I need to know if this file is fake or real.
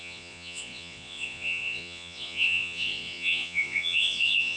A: fake